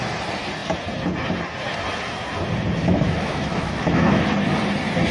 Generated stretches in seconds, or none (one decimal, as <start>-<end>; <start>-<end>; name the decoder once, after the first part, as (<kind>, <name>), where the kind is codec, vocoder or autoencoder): 2.8-4.2 (autoencoder, DAC-VAE)